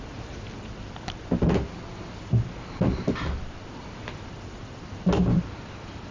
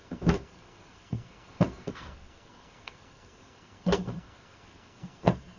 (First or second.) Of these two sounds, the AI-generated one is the second